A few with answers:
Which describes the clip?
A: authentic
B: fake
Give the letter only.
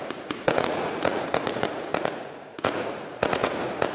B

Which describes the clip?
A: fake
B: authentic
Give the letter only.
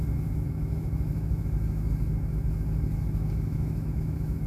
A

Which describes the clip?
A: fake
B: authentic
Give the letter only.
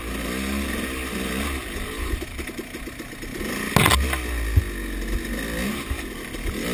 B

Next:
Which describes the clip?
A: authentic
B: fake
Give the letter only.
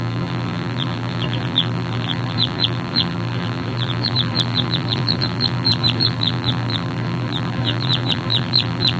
B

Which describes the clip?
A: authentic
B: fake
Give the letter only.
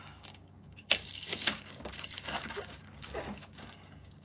B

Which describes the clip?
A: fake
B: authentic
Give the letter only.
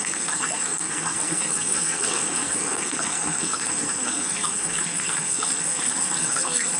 A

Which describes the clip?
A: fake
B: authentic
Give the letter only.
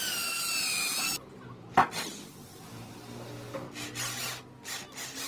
B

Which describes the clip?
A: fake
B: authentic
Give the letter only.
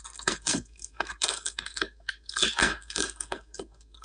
A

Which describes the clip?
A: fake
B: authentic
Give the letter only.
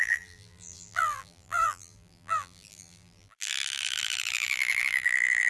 A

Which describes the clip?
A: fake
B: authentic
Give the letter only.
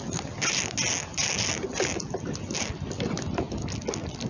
B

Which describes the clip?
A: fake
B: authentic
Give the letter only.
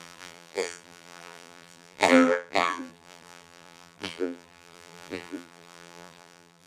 A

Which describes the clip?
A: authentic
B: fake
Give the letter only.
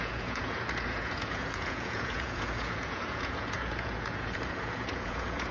B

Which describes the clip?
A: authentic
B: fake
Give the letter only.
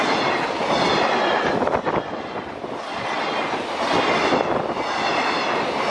A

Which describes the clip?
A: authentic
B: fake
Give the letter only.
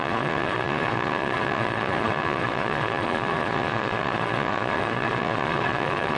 B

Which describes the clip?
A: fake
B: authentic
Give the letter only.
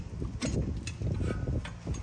B